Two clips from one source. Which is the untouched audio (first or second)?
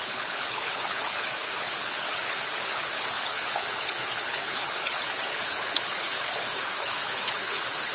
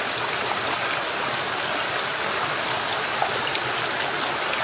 second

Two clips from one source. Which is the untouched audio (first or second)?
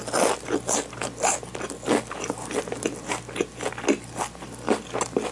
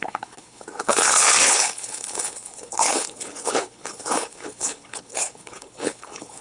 first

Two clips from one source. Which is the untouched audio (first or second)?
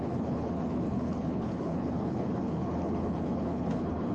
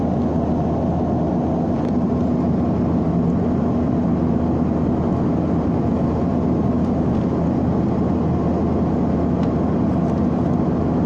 second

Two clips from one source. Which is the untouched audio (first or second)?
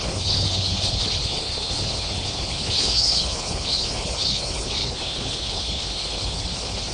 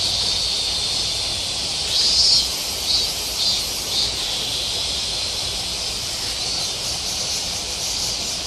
second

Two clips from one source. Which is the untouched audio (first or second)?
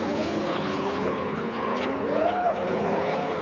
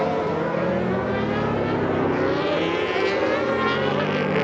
second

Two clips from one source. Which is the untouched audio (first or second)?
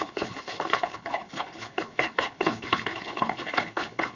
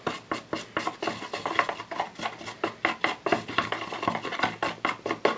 second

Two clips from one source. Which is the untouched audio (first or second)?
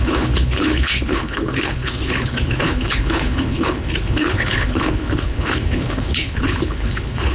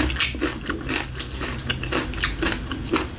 second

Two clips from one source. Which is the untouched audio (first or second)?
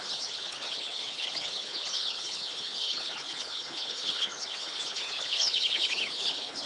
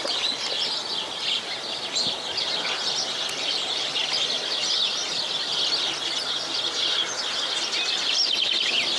second